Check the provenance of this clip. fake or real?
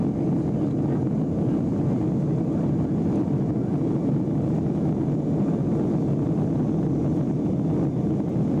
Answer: real